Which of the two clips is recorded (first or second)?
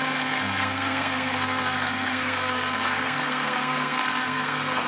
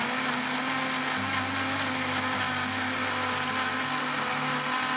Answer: second